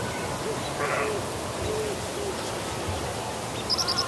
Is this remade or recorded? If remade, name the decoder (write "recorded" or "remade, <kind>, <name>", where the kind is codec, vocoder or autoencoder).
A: recorded